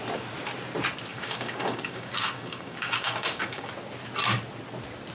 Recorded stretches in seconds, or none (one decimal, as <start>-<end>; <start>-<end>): 0.0-1.1; 3.7-5.1